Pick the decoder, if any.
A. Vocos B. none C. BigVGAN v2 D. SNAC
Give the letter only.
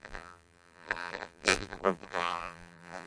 C